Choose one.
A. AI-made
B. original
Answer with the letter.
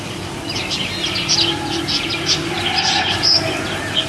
B